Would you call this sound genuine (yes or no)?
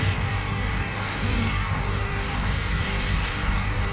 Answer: no